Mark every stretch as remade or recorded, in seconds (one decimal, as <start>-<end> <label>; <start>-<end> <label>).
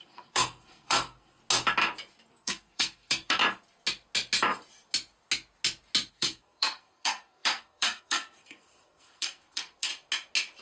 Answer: 0.0-1.4 remade; 1.4-2.3 recorded; 2.3-3.4 remade; 3.4-6.1 recorded; 6.1-9.9 remade; 9.9-10.6 recorded